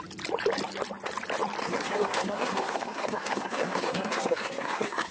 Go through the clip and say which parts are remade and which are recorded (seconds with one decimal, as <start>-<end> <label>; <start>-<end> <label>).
0.0-1.6 recorded; 1.6-5.1 remade